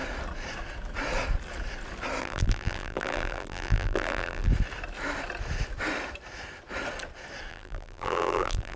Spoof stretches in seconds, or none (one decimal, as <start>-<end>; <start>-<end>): 2.2-4.5; 7.5-8.8